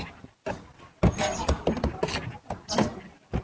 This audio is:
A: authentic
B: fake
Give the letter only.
A